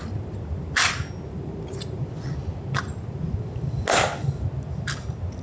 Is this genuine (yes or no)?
yes